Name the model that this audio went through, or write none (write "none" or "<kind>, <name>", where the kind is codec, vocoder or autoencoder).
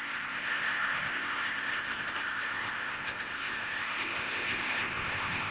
codec, ZipCodec